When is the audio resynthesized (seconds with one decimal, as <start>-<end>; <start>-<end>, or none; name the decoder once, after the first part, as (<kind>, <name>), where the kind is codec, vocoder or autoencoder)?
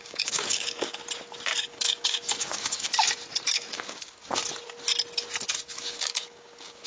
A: 0.0-1.0 (codec, DAC); 1.6-2.9; 3.7-4.4; 5.5-6.9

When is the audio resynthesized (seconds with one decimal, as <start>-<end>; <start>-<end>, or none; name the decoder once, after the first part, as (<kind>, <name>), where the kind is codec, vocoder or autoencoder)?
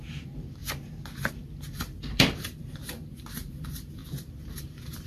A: 0.0-0.6 (vocoder, BigVGAN v2); 1.3-4.0; 4.6-5.1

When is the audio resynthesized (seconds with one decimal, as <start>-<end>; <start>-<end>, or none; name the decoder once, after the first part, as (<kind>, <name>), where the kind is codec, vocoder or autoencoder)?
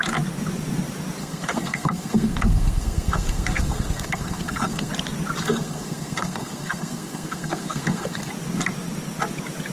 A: 1.2-4.9 (codec, SNAC); 5.4-8.3